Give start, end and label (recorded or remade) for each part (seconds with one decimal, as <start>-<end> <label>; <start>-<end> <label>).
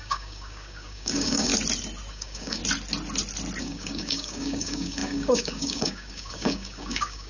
0.0-1.5 remade; 1.5-2.1 recorded; 2.1-2.6 remade; 2.6-3.6 recorded; 3.6-7.3 remade